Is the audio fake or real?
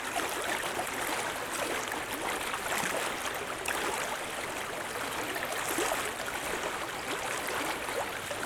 real